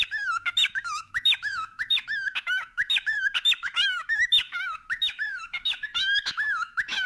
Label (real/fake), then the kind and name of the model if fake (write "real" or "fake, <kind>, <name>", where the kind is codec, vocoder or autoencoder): fake, autoencoder, DAC-VAE